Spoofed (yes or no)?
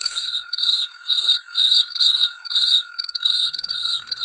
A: yes